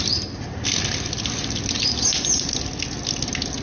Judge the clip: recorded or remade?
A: recorded